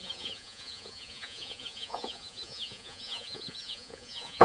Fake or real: fake